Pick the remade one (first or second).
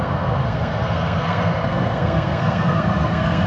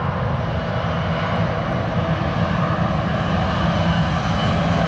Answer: first